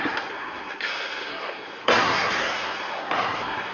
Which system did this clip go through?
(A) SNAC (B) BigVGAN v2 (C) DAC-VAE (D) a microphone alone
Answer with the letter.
A